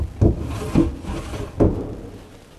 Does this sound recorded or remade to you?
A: recorded